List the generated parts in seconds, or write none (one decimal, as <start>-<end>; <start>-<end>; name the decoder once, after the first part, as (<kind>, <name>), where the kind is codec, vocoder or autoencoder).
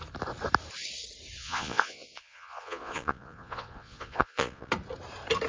1.4-4.7 (vocoder, Vocos)